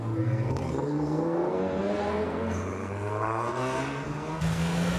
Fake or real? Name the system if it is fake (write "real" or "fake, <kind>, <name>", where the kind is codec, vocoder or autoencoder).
fake, codec, SNAC